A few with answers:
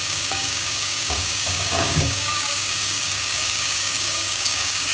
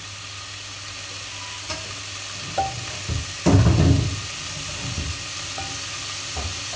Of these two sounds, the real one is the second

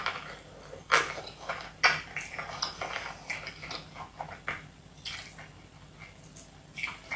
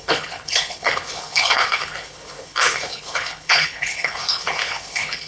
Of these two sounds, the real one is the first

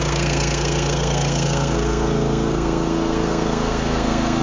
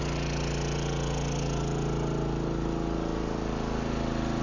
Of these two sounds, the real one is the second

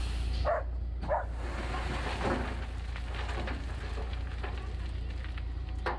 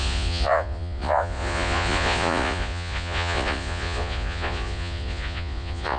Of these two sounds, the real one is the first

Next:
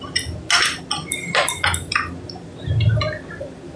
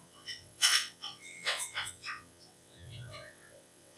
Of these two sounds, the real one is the first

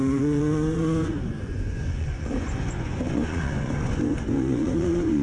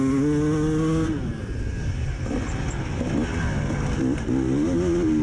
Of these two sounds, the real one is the second